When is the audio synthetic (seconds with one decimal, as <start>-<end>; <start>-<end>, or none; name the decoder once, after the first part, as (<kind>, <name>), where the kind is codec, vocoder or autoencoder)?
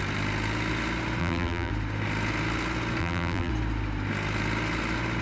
1.2-1.7 (vocoder, BigVGAN v2); 3.0-3.5